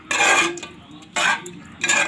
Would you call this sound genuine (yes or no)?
yes